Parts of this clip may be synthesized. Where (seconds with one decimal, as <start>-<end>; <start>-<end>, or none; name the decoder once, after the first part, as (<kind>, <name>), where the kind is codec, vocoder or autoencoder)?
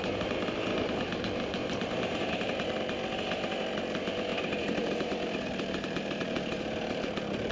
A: 1.6-2.7 (vocoder, BigVGAN v2); 4.3-6.6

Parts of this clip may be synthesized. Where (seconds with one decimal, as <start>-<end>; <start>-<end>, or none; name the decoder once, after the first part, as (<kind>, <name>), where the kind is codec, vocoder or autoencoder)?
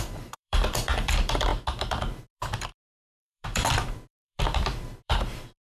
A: 0.0-1.5 (vocoder, BigVGAN v2); 2.2-5.7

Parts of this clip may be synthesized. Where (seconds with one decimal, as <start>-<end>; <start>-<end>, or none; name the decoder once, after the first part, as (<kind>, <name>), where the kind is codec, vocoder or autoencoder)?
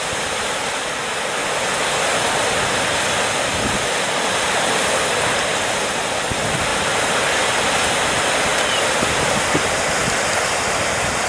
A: 0.0-1.4 (vocoder, BigVGAN v2); 3.4-8.5; 10.5-11.3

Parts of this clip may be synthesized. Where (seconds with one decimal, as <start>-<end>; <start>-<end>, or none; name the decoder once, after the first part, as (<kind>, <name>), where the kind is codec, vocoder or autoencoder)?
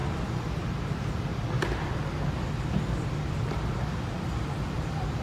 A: 0.7-1.3 (vocoder, BigVGAN v2); 4.4-5.2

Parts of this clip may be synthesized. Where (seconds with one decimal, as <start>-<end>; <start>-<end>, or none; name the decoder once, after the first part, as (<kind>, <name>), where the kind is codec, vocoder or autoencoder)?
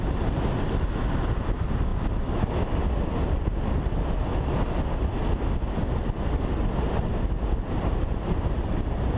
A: none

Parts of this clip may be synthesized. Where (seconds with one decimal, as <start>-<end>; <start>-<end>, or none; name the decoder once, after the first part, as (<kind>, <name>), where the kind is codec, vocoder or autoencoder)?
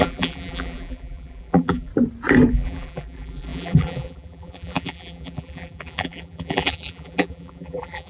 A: 0.0-1.9 (vocoder, BigVGAN v2); 2.5-8.1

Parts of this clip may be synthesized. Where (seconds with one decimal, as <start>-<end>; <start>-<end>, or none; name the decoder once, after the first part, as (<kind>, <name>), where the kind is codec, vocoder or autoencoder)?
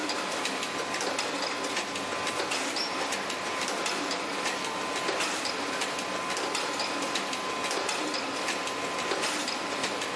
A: none